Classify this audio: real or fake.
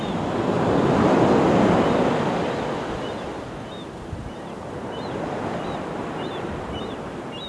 real